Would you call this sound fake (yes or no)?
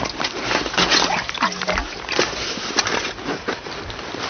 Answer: no